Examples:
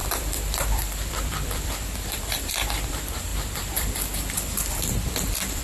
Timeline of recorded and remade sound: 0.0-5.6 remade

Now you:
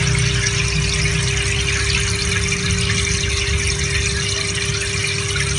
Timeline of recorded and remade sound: 0.0-5.6 recorded